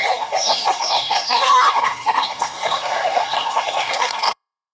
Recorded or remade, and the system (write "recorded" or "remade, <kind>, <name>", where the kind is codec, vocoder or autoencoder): remade, codec, SNAC